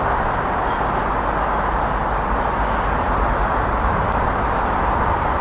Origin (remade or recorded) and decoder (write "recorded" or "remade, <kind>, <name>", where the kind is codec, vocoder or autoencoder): recorded